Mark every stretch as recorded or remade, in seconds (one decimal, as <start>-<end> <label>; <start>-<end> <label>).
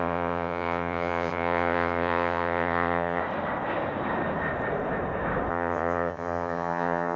0.0-3.2 remade; 3.2-5.5 recorded; 5.5-7.2 remade